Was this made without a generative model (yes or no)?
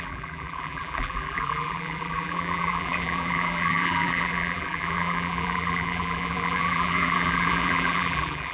no